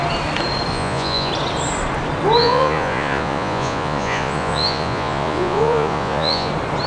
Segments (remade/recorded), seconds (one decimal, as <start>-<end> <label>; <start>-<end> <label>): 0.0-0.7 recorded; 0.7-1.3 remade; 1.3-2.4 recorded; 2.4-6.5 remade; 6.5-6.9 recorded